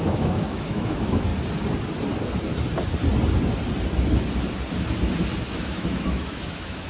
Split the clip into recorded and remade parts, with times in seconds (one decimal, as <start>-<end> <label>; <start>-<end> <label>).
0.0-1.3 remade; 1.3-5.4 recorded; 5.4-6.9 remade